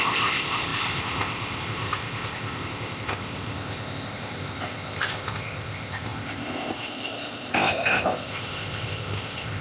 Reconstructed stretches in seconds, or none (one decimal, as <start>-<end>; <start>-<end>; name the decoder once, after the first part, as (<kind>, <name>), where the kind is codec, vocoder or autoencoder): 0.0-9.6 (codec, ZipCodec)